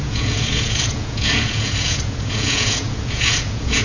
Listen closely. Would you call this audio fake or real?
fake